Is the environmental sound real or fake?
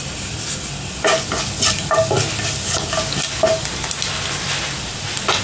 real